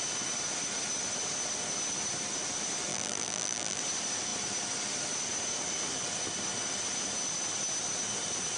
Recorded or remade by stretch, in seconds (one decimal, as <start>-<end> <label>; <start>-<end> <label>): 0.0-2.9 recorded; 2.9-3.8 remade; 3.8-8.6 recorded

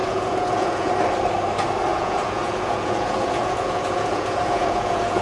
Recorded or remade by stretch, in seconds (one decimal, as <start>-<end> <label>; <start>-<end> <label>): 0.0-0.9 remade; 0.9-1.9 recorded; 1.9-5.2 remade